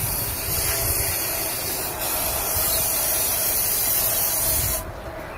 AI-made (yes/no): no